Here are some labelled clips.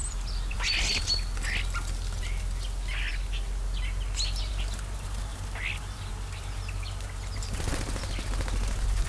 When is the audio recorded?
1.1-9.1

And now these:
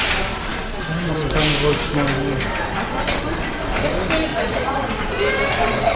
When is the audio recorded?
0.0-4.3; 4.9-6.0

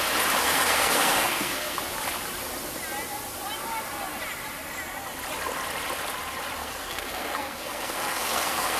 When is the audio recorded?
0.0-0.4; 1.8-6.6

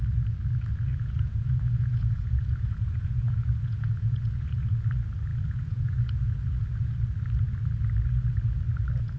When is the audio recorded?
0.0-0.9; 4.7-5.3; 6.9-9.2

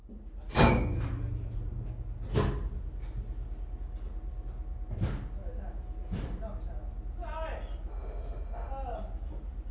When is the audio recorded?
0.0-7.9; 8.7-9.7

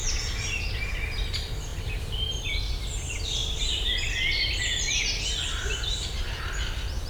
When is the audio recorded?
0.0-1.7; 2.6-7.1

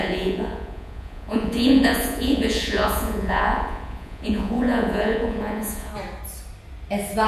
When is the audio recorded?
5.9-7.3

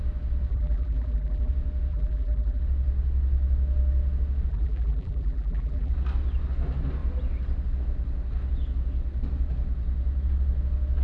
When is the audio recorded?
0.0-0.5; 1.5-1.9; 2.6-4.5; 5.9-11.0